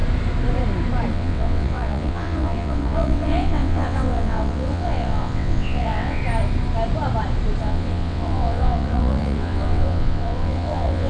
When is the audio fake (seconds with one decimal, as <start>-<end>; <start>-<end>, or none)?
1.1-6.2; 7.6-11.1